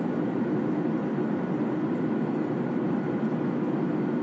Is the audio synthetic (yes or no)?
no